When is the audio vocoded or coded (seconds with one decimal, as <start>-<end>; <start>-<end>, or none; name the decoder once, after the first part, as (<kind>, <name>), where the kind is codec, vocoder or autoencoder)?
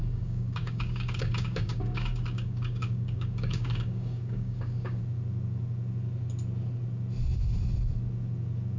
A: 0.0-5.0 (codec, DAC)